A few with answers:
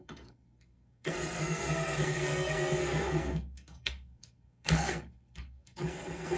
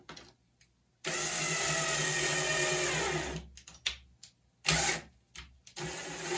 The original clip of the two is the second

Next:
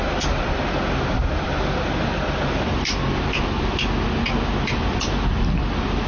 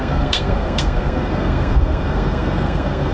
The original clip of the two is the first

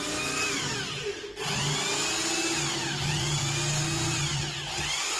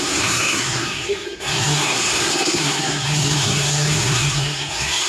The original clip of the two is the first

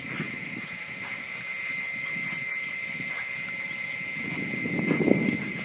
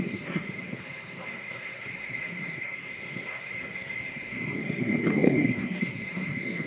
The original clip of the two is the first